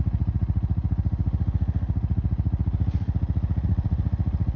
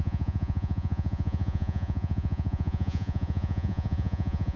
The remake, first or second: second